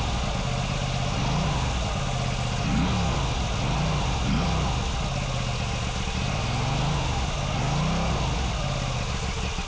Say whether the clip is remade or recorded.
recorded